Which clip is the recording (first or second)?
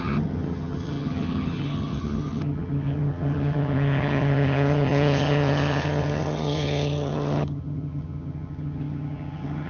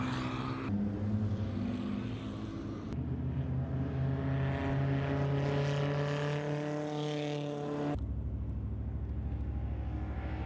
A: second